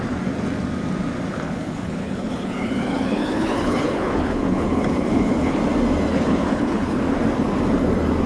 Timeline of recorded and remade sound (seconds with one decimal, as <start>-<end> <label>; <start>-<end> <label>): 0.0-1.3 recorded; 1.3-5.6 remade; 5.6-6.1 recorded; 6.1-7.0 remade; 7.0-8.3 recorded